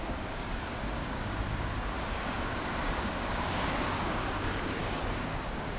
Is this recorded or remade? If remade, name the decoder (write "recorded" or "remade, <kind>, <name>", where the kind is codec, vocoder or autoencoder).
remade, codec, DAC